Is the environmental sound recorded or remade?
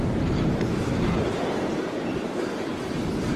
remade